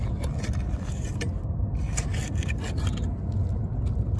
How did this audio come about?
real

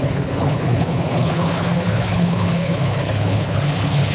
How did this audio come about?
fake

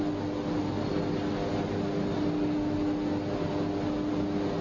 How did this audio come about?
real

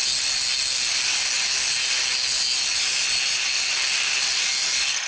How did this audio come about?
real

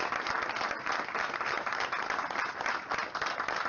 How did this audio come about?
real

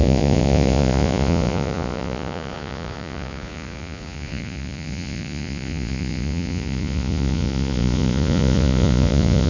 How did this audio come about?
fake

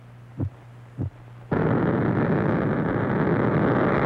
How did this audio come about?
real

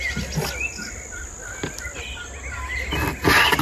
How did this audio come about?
real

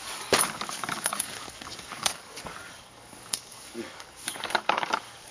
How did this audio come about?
fake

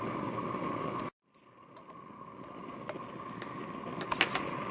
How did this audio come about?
real